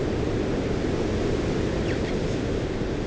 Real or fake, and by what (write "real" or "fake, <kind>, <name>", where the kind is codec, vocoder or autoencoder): real